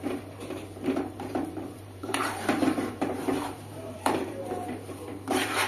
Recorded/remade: remade